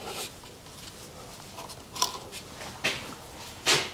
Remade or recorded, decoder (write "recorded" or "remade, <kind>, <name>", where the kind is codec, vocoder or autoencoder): recorded